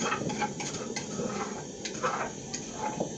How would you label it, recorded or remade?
remade